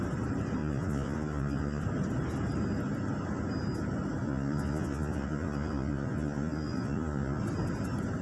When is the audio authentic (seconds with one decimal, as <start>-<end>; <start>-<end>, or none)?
0.0-0.6; 1.8-4.2; 7.4-8.2